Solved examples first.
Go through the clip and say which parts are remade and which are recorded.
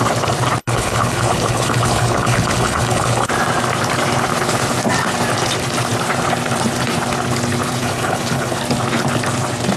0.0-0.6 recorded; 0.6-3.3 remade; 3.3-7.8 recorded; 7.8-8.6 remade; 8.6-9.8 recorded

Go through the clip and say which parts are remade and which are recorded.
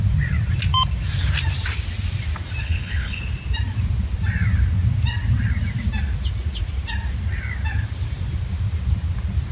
0.0-2.6 recorded; 2.6-3.2 remade; 3.2-9.5 recorded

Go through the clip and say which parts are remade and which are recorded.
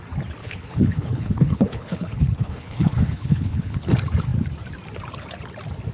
0.0-0.4 recorded; 0.4-3.9 remade; 3.9-5.9 recorded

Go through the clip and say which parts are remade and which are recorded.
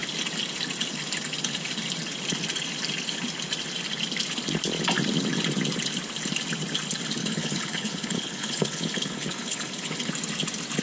0.0-7.2 recorded; 7.2-10.1 remade; 10.1-10.8 recorded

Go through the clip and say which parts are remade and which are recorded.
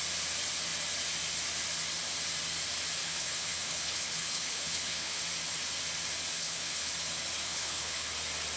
0.0-3.0 recorded; 3.0-5.2 remade; 5.2-6.3 recorded; 6.3-6.9 remade; 6.9-7.4 recorded; 7.4-8.1 remade; 8.1-8.6 recorded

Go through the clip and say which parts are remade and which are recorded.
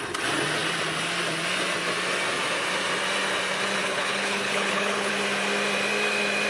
0.0-3.8 recorded; 3.8-5.1 remade; 5.1-6.5 recorded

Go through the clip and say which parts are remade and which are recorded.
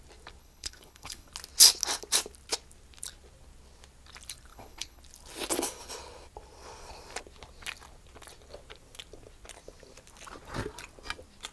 0.0-0.4 recorded; 0.4-1.3 remade; 1.3-4.5 recorded; 4.5-5.0 remade; 5.0-11.5 recorded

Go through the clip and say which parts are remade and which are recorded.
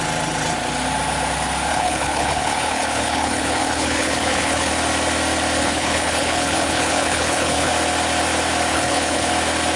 0.0-1.7 recorded; 1.7-4.7 remade; 4.7-5.6 recorded; 5.6-7.7 remade; 7.7-8.7 recorded; 8.7-9.3 remade; 9.3-9.8 recorded